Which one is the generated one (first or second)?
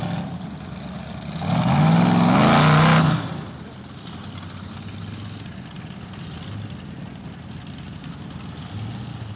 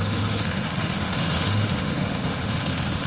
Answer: second